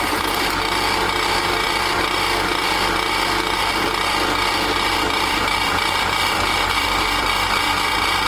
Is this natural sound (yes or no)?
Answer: no